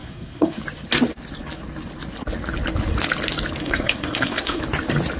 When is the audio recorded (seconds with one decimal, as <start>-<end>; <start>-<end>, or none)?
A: 0.6-3.6; 4.6-5.2